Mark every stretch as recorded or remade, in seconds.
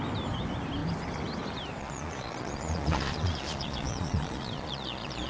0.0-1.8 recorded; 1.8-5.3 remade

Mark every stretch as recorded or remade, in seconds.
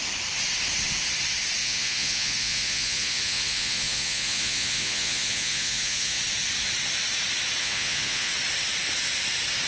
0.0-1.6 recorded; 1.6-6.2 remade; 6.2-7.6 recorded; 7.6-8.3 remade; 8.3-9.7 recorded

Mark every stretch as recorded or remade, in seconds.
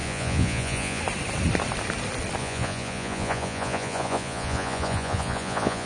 0.0-1.0 remade; 1.0-2.4 recorded; 2.4-5.9 remade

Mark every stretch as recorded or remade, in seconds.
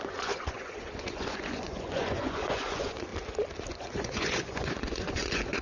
0.0-3.1 remade; 3.1-3.7 recorded; 3.7-5.6 remade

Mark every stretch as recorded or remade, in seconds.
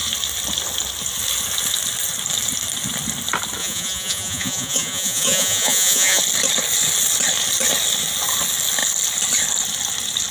0.0-3.6 recorded; 3.6-6.2 remade; 6.2-10.3 recorded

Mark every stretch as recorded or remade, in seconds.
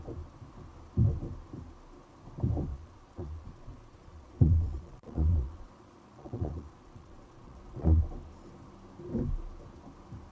0.0-2.7 recorded; 2.7-8.0 remade; 8.0-10.3 recorded